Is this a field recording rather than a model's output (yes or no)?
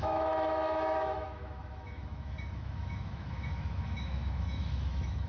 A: no